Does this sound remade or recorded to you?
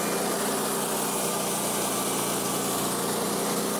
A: recorded